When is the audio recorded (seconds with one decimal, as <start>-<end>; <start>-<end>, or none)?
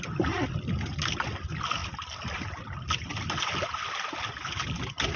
0.0-5.2